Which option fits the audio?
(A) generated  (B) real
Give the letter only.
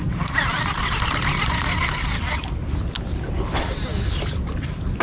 B